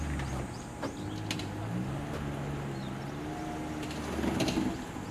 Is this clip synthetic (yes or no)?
no